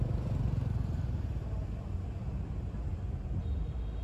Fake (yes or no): no